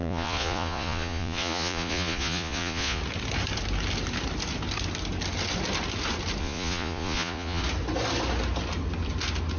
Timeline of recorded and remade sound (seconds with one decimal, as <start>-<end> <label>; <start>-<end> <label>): 0.0-3.0 remade; 3.0-6.4 recorded; 6.4-7.6 remade; 7.6-9.6 recorded